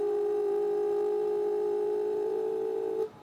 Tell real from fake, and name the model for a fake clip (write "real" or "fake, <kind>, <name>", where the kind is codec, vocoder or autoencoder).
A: fake, vocoder, BigVGAN v2